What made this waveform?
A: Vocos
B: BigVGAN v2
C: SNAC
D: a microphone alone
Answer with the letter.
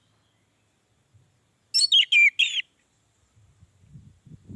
D